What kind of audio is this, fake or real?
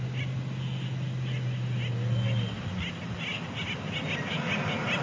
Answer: real